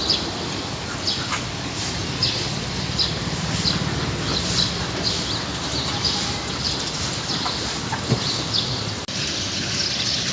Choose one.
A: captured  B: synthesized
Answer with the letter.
A